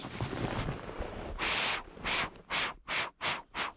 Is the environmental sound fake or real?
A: fake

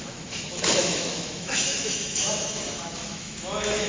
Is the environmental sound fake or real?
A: fake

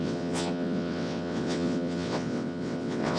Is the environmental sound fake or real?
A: fake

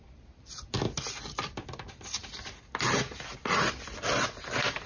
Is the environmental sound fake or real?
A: real